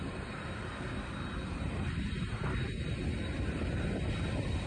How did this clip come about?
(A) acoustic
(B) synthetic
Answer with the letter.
A